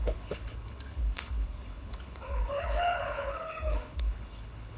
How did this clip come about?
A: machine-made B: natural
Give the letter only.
A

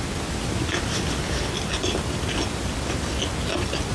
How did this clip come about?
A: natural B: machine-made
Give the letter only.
A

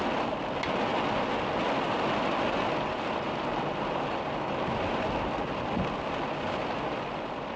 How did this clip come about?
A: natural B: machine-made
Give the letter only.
A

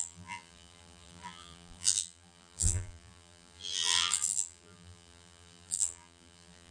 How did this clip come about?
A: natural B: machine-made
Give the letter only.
B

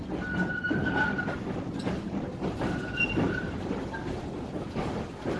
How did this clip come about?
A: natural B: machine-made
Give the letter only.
A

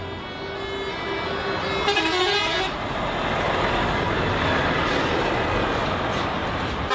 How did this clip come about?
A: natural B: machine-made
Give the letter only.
A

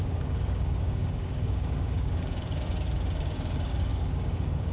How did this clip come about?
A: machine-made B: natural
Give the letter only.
A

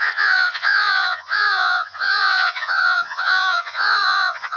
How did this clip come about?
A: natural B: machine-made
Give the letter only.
B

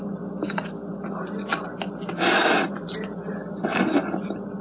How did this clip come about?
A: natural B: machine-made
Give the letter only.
A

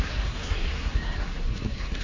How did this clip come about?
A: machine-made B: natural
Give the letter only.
A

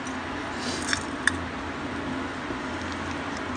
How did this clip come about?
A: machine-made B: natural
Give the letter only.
B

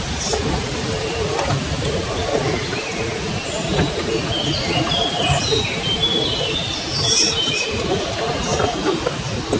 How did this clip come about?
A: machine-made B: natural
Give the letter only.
B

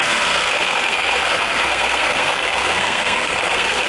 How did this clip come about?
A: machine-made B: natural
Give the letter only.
A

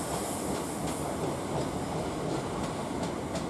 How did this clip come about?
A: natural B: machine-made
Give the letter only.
A